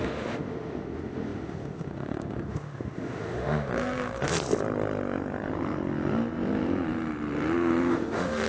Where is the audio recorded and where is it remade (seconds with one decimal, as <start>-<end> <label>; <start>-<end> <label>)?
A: 0.0-4.3 remade; 4.3-7.9 recorded; 7.9-8.5 remade